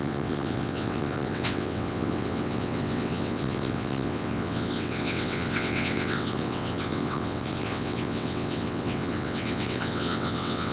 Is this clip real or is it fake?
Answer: fake